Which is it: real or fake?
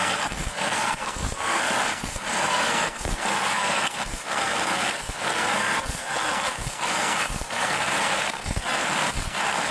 fake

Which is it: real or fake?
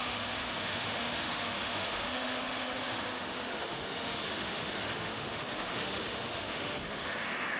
fake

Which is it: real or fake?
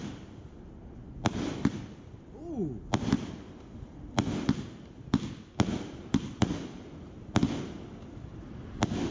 real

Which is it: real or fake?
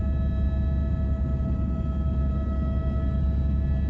real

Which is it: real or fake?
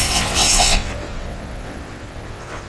fake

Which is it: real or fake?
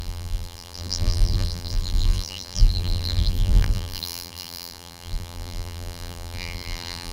fake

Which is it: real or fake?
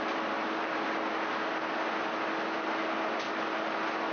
real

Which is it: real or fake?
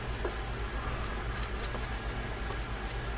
real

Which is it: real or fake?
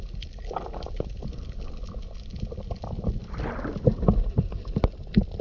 real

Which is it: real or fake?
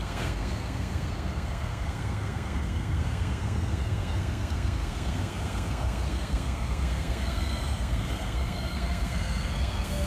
fake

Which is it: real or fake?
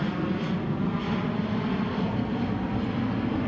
real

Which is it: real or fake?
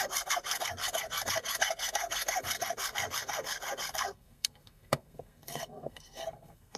fake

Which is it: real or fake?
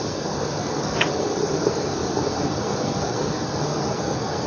fake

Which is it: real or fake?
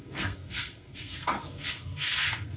fake